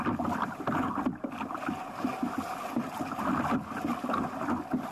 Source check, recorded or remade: recorded